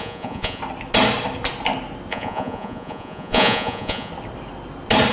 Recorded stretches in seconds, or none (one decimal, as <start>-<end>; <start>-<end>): 0.6-2.1; 4.1-5.1